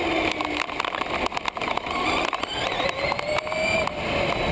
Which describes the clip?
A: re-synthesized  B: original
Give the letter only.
B